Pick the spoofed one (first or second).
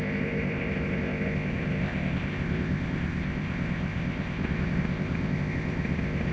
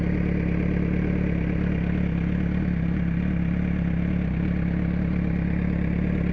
first